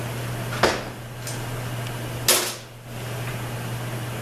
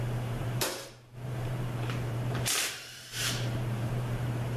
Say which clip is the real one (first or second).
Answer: first